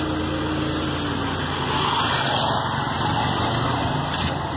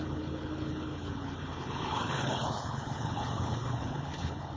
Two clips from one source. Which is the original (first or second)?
first